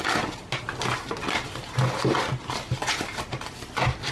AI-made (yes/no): no